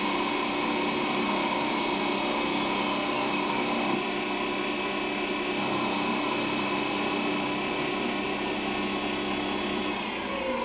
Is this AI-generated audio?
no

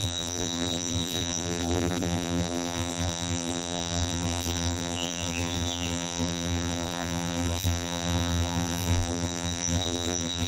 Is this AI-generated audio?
yes